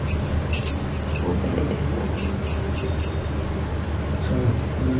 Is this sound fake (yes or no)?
no